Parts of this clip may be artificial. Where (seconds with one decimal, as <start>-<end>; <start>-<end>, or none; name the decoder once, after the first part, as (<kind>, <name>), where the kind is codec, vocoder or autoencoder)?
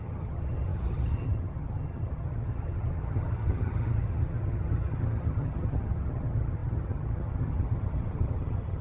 0.0-8.8 (vocoder, HiFi-GAN)